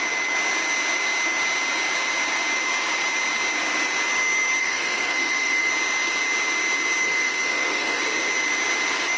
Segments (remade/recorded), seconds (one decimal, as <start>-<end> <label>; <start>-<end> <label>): 0.0-4.6 recorded; 4.6-5.7 remade; 5.7-7.0 recorded; 7.0-8.0 remade; 8.0-9.2 recorded